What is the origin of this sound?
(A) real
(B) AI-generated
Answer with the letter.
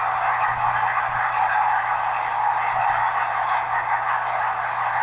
A